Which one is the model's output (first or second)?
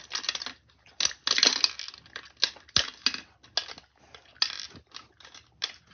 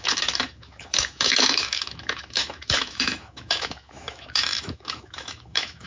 second